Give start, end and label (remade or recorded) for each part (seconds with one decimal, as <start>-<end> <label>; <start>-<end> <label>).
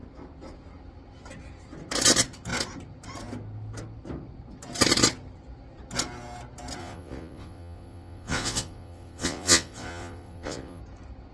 0.0-6.8 recorded; 6.8-10.8 remade; 10.8-11.3 recorded